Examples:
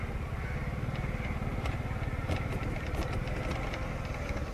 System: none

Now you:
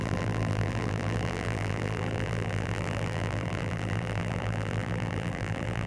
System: vocoder, BigVGAN v2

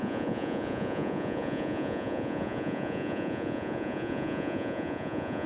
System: vocoder, Vocos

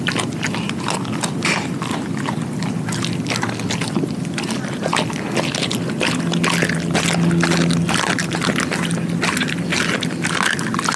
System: none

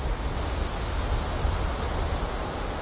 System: none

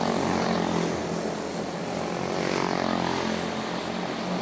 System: none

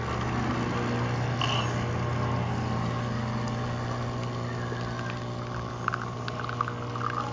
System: none